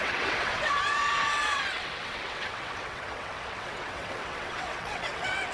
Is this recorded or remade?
remade